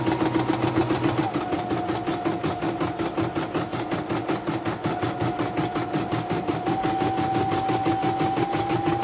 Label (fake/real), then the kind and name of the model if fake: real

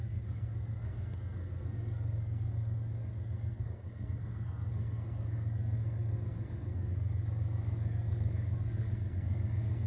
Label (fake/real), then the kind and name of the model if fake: fake, codec, SNAC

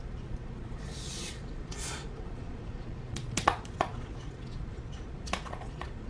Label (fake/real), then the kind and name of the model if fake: fake, vocoder, Vocos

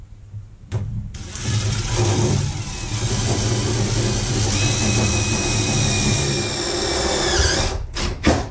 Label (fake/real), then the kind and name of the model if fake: real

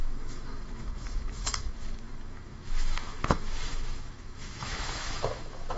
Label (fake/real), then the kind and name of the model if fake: fake, autoencoder, DAC-VAE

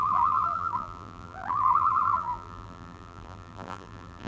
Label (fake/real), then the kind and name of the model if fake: fake, vocoder, BigVGAN v2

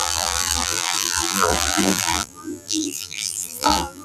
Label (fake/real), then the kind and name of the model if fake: fake, vocoder, BigVGAN v2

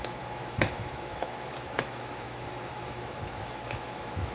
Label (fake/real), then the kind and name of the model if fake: fake, autoencoder, DAC-VAE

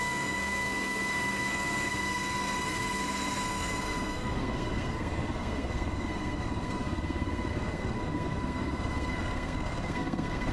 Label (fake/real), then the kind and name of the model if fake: fake, codec, SNAC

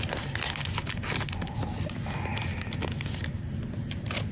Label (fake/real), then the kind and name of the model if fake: real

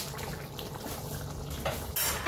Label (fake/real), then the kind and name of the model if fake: real